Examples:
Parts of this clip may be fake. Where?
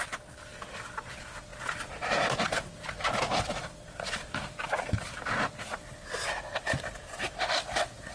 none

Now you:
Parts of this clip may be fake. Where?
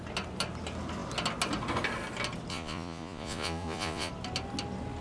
2.5-4.1 (vocoder, Vocos)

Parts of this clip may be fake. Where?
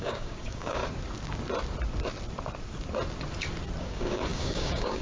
0.0-0.8 (codec, DAC); 3.8-5.0